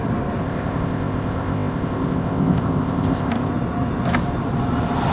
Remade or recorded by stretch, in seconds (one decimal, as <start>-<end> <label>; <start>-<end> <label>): 0.0-0.4 recorded; 0.4-3.5 remade; 3.5-5.1 recorded